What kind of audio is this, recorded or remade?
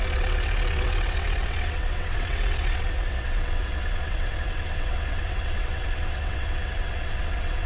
remade